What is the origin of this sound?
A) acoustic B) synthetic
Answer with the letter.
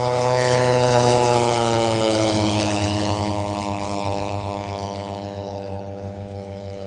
B